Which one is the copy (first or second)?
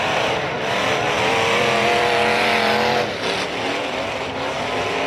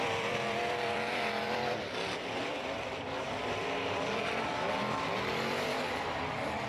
second